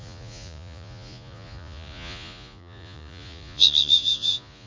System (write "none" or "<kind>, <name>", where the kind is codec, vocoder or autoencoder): vocoder, Vocos